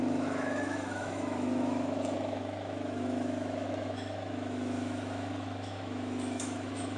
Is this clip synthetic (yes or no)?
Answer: yes